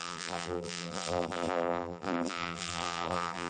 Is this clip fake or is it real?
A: fake